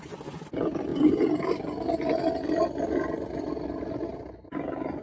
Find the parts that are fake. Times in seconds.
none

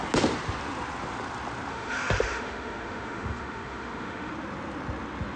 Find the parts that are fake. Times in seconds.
1.7-4.3 (autoencoder, DAC-VAE)

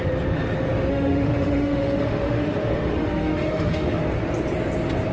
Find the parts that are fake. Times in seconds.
0.9-4.0 (autoencoder, DAC-VAE)

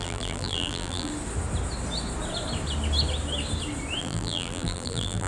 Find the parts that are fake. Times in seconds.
0.0-1.1 (vocoder, BigVGAN v2); 4.0-5.3

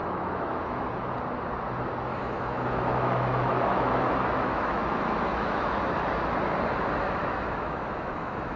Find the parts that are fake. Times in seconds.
0.0-0.9 (autoencoder, DAC-VAE); 2.1-5.8; 7.2-8.6

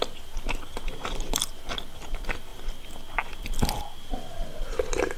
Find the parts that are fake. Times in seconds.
none

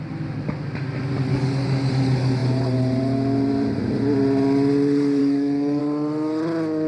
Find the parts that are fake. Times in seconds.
1.3-1.9 (codec, DAC); 5.2-5.8